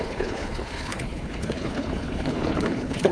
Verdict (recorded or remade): remade